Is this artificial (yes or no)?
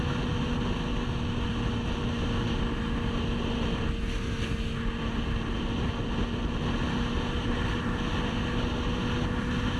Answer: no